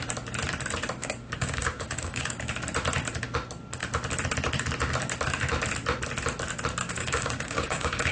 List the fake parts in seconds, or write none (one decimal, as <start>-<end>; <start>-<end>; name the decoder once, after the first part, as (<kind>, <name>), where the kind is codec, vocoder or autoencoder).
1.0-2.5 (codec, DAC); 6.8-8.1